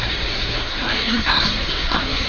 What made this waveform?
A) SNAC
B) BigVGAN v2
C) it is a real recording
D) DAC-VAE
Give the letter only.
A